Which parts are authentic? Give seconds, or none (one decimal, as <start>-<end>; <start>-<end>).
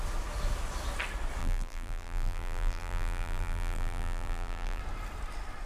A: 0.0-1.4; 4.8-5.7